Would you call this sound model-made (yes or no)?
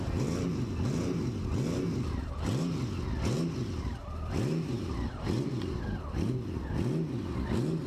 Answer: no